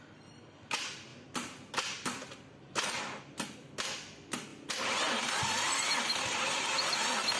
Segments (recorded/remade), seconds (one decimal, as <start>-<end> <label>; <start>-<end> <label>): 0.0-7.4 recorded